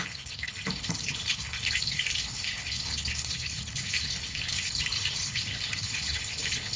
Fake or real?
fake